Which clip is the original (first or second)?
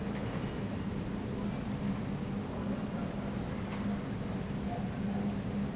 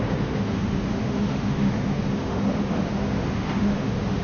first